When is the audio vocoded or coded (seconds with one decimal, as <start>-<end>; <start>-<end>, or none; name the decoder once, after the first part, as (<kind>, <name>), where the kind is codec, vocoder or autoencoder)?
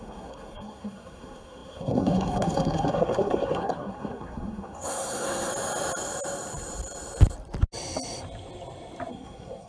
0.0-5.5 (codec, SNAC); 9.1-9.7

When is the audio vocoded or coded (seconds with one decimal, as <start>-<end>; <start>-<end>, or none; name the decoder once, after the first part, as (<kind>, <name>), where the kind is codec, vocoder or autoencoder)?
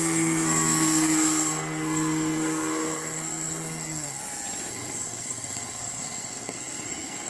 0.0-4.2 (codec, SNAC); 4.7-7.3